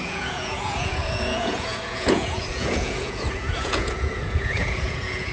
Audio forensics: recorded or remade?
remade